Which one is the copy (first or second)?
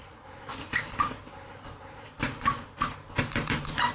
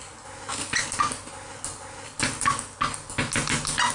first